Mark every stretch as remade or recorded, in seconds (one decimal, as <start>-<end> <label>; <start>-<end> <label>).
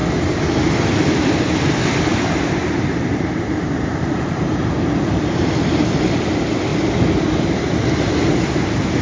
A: 0.0-2.6 recorded; 2.6-4.5 remade; 4.5-9.0 recorded